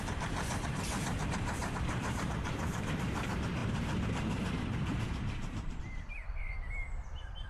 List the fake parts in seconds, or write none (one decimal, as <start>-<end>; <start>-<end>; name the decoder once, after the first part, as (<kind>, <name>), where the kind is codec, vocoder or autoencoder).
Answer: 0.0-6.2 (vocoder, BigVGAN v2); 7.1-7.5

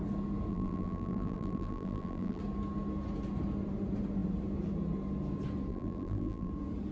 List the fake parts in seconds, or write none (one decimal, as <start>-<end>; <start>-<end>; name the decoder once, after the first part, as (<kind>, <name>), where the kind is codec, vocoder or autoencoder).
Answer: 0.5-2.4 (vocoder, BigVGAN v2); 5.7-6.5

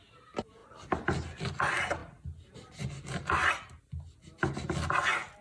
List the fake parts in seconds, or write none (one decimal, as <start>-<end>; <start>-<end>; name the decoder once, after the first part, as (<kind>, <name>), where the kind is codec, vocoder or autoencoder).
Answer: none

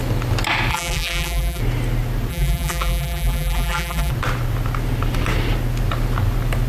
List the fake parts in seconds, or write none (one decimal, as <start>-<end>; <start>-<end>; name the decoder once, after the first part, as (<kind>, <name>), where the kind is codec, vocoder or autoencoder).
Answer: 0.7-1.6 (vocoder, BigVGAN v2); 2.3-4.1